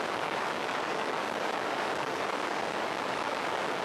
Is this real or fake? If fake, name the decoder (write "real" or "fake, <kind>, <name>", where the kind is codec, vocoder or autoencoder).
fake, codec, DAC